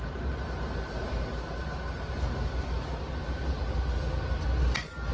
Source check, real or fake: real